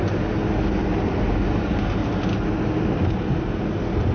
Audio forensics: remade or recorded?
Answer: recorded